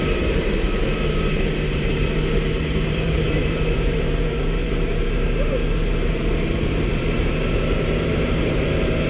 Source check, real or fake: fake